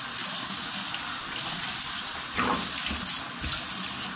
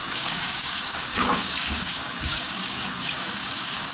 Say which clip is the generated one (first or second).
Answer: second